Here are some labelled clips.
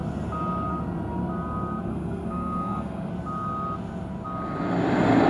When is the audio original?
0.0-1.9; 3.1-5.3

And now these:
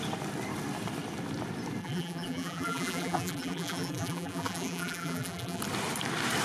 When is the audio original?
0.0-1.8; 5.6-6.4

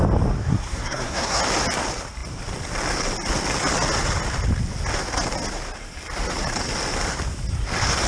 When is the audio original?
0.0-0.4; 1.4-8.1

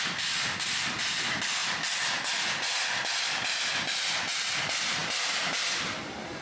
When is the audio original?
0.0-6.4

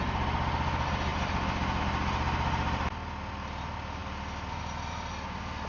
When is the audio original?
0.0-5.7

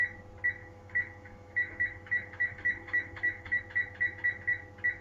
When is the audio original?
0.0-0.6; 3.6-5.0

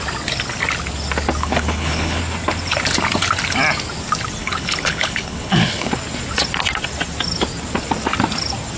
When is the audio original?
0.0-1.4; 2.2-4.4; 5.9-8.8

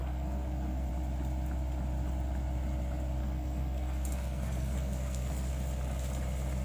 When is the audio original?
0.9-3.2; 5.5-6.6